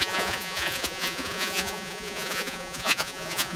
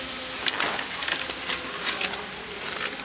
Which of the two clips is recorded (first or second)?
second